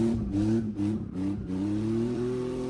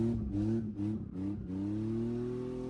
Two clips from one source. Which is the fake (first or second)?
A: first